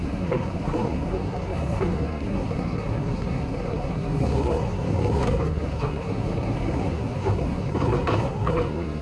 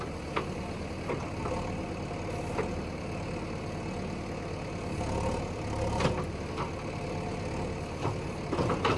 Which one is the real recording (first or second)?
second